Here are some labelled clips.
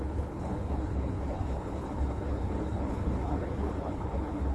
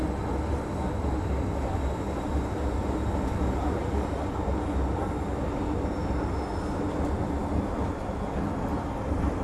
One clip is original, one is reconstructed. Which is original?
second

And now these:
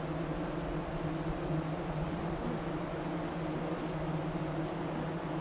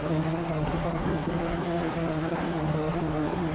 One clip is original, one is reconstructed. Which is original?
first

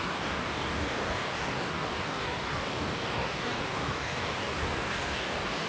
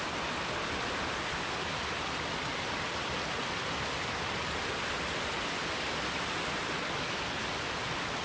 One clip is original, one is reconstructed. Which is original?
second